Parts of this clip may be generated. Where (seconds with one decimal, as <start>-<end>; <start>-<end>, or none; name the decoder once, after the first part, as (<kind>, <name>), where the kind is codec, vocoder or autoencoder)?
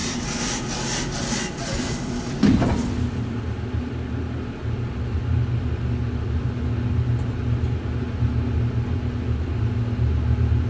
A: 0.0-3.9 (vocoder, BigVGAN v2); 4.6-5.2